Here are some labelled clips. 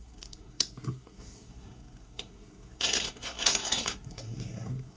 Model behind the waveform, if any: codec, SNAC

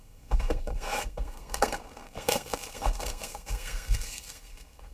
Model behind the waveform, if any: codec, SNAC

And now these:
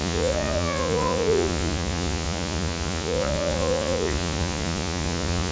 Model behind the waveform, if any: vocoder, Vocos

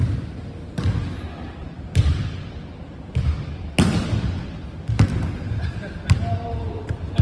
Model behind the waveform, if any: none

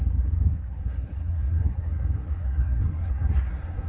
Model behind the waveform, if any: codec, SNAC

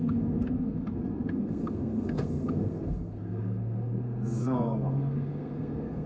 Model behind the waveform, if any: codec, SNAC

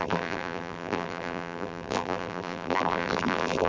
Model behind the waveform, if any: vocoder, BigVGAN v2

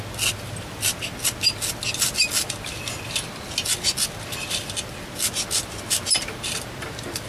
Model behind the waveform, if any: none